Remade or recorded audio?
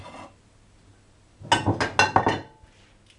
recorded